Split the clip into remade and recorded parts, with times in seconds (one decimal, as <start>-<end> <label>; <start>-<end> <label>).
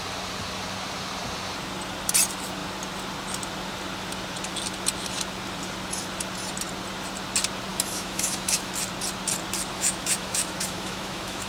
0.0-7.7 recorded; 7.7-8.7 remade; 8.7-9.7 recorded; 9.7-11.5 remade